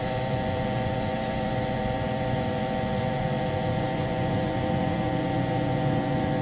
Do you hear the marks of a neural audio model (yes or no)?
yes